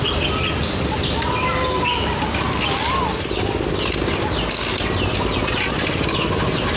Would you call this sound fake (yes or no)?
no